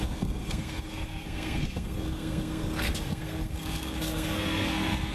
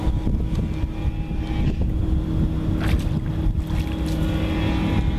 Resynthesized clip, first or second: first